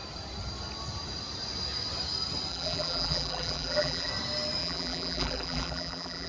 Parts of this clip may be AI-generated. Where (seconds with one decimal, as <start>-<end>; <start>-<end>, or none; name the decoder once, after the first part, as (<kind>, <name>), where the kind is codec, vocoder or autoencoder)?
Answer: 2.5-4.1 (vocoder, BigVGAN v2); 4.6-6.3